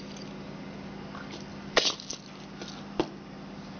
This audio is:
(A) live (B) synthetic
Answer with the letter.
A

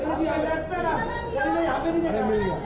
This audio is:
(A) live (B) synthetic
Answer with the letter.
A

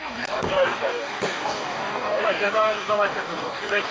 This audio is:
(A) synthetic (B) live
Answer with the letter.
A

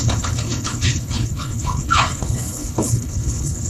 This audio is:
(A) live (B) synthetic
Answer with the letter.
B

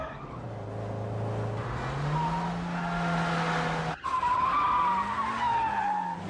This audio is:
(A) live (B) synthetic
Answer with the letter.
A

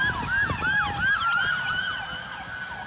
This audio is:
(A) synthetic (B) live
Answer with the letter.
B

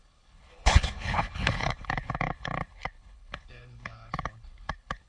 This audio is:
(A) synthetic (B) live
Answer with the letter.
A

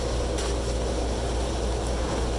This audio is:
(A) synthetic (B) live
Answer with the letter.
B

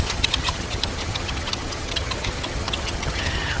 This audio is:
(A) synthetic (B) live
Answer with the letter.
A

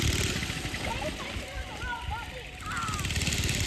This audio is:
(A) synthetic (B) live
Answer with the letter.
B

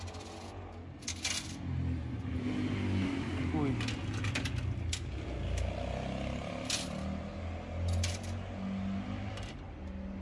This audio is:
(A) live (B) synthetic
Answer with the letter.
A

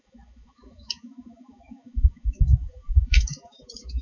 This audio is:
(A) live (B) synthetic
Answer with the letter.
B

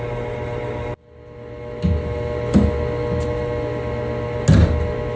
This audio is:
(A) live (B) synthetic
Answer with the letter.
A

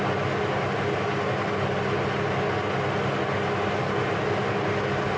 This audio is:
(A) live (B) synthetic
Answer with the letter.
A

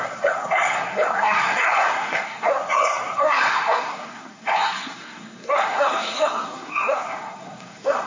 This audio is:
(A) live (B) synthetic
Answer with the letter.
B